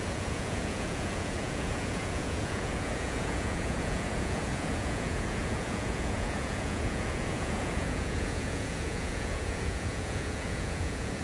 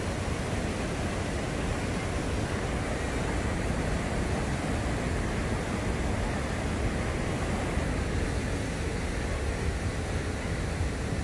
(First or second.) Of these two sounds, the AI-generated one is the first